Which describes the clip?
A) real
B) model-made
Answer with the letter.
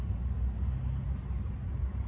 A